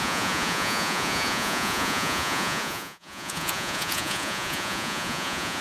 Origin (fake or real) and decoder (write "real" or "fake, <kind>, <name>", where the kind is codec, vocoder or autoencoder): fake, vocoder, Vocos